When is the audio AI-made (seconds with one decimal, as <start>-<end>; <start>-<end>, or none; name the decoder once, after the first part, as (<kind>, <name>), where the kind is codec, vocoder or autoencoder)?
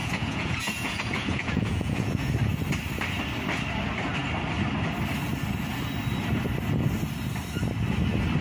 0.0-2.3 (vocoder, Vocos)